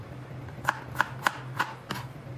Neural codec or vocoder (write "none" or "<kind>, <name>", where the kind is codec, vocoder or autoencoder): none